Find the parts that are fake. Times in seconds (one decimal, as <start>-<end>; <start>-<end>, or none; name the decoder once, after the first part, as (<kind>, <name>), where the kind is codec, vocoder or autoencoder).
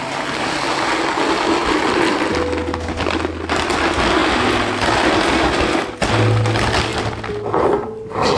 none